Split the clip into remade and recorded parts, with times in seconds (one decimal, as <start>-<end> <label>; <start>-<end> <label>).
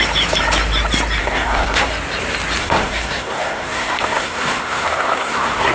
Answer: 0.0-1.2 recorded; 1.2-1.9 remade; 1.9-2.6 recorded; 2.6-5.7 remade